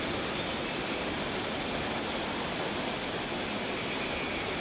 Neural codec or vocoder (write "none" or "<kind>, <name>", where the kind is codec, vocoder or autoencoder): none